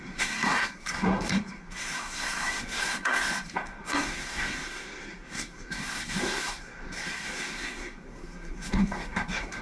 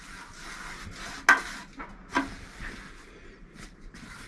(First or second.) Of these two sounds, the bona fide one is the second